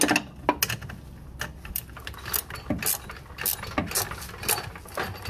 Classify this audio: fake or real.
real